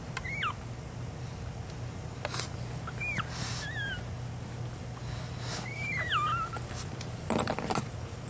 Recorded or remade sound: recorded